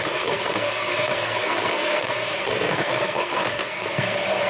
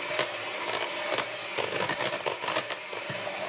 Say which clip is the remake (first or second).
first